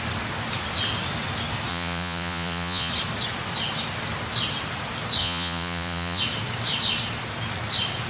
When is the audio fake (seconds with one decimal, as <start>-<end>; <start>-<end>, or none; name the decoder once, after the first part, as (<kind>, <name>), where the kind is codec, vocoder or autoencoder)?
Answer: 1.7-2.9 (vocoder, Vocos); 5.2-6.2

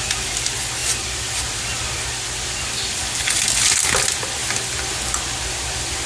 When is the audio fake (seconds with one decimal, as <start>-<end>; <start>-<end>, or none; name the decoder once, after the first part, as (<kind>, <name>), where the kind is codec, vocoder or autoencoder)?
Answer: none

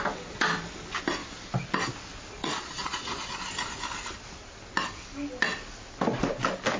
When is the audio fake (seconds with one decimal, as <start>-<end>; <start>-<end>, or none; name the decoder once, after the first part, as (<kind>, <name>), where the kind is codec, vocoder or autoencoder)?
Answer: 2.4-3.3 (vocoder, Vocos)

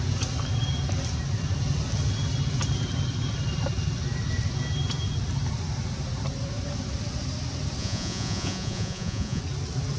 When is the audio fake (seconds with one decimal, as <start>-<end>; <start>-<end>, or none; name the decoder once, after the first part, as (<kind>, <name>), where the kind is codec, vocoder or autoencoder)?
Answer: 7.8-9.4 (vocoder, Vocos)

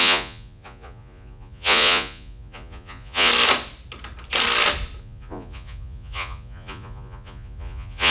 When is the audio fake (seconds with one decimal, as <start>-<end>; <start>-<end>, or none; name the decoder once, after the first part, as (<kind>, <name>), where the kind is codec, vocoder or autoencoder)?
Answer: 0.0-3.3 (vocoder, Vocos); 5.0-8.1